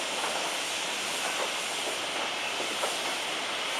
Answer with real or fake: real